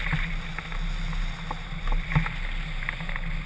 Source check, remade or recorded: recorded